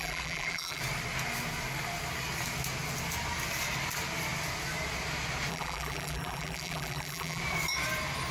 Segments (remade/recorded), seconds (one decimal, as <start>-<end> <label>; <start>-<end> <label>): 0.0-0.8 remade; 0.8-5.5 recorded; 5.5-7.4 remade; 7.4-8.3 recorded